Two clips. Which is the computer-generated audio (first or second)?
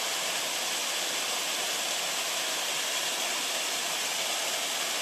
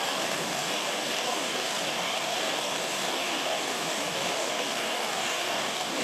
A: second